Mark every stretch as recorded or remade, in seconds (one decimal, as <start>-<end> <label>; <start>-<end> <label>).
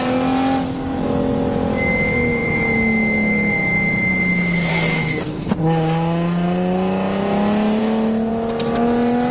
0.0-4.7 recorded; 4.7-5.5 remade; 5.5-9.3 recorded